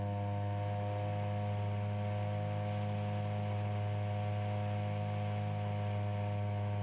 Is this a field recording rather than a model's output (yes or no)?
yes